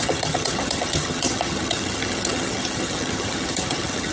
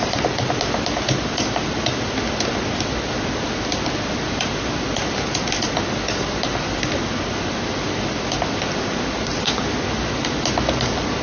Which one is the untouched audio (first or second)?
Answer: second